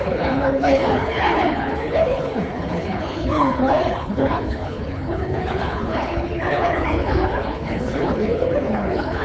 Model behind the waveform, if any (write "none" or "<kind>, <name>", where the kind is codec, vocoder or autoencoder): codec, HILCodec